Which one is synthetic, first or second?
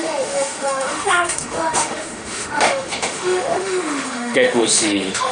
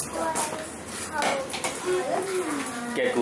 first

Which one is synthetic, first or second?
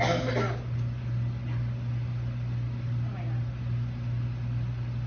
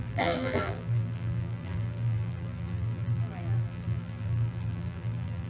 second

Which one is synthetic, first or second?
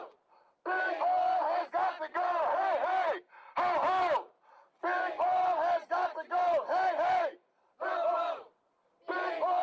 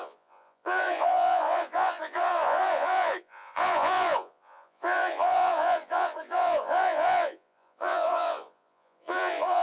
second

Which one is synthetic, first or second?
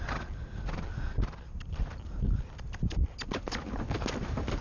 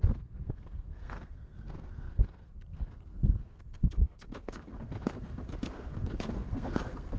second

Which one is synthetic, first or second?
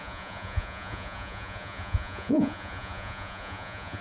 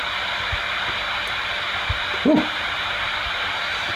first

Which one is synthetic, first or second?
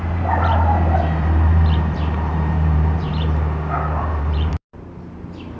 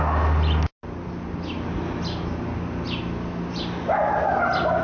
first